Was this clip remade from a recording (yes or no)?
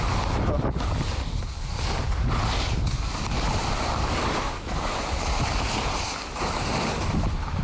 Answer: no